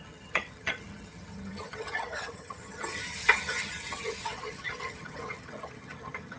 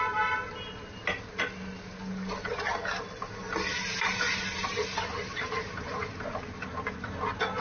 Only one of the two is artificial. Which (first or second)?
first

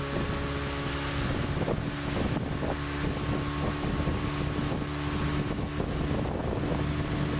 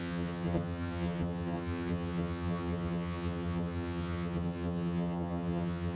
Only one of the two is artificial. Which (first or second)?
second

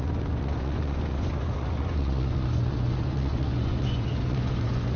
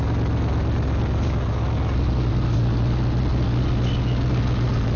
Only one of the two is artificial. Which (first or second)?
first